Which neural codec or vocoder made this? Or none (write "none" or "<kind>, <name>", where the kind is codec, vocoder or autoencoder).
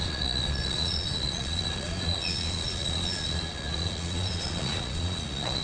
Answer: vocoder, Vocos